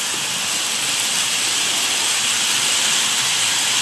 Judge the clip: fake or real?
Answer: real